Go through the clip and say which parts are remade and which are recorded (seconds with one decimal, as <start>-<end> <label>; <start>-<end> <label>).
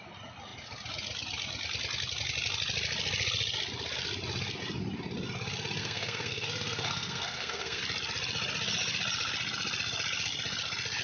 0.0-5.8 recorded; 5.8-7.8 remade; 7.8-11.0 recorded